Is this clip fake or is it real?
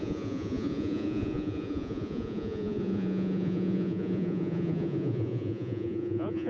fake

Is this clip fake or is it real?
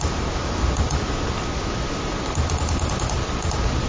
real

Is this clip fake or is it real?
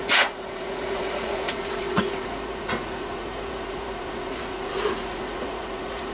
fake